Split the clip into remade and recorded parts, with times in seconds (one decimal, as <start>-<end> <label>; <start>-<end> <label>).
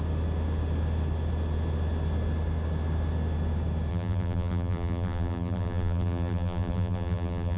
0.0-3.9 recorded; 3.9-7.6 remade